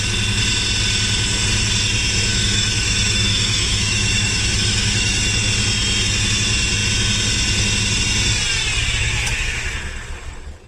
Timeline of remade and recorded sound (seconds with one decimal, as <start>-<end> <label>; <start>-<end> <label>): 0.0-2.3 recorded; 2.3-5.2 remade; 5.2-9.0 recorded; 9.0-9.7 remade; 9.7-10.7 recorded